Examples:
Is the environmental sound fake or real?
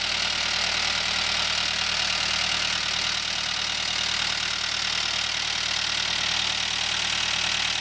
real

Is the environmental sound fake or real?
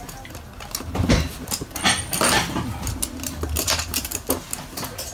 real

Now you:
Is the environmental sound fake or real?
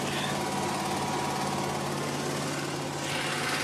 real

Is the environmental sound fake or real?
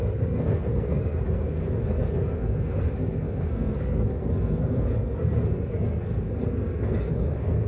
fake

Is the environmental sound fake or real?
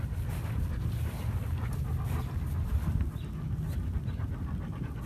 real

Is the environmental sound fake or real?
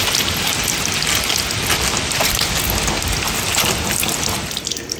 real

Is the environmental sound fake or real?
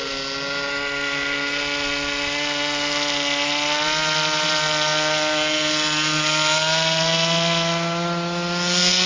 real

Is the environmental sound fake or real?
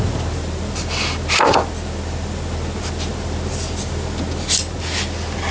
real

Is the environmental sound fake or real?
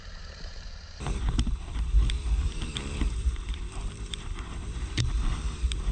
fake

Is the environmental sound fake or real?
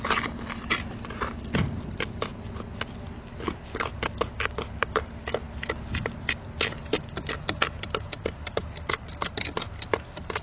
real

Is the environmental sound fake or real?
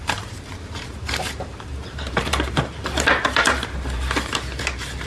fake